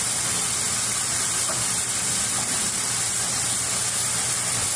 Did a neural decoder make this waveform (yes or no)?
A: no